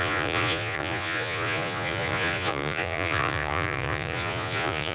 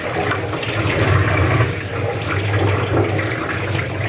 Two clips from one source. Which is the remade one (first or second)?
first